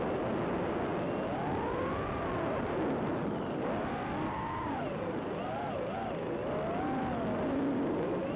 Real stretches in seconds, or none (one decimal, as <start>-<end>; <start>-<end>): 0.0-8.4